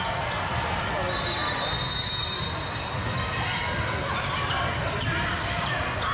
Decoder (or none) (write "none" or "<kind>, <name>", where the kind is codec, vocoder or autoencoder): none